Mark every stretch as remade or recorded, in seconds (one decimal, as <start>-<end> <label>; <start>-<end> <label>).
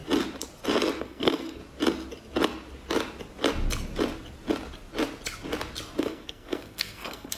0.0-1.0 recorded; 1.0-1.6 remade; 1.6-6.0 recorded; 6.0-7.4 remade